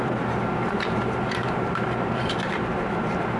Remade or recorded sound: remade